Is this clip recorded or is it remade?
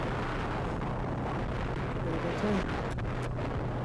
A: recorded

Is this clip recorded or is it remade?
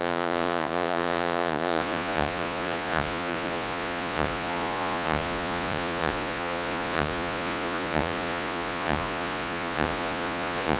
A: remade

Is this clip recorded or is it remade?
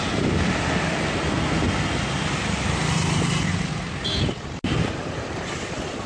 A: recorded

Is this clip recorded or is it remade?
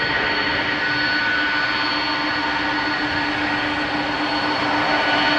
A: recorded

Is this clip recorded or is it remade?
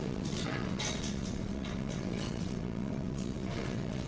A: remade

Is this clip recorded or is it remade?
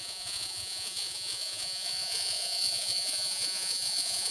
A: remade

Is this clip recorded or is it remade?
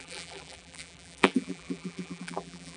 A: remade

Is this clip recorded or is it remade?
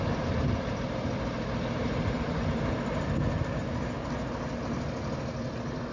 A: recorded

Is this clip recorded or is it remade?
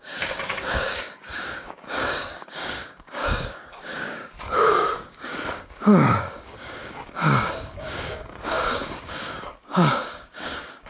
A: remade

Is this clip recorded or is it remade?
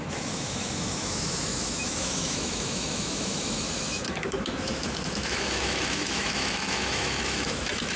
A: remade